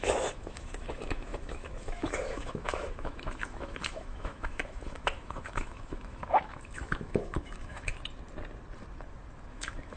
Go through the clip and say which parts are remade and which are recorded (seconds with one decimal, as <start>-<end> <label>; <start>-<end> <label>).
0.0-7.9 remade; 7.9-9.5 recorded; 9.5-10.0 remade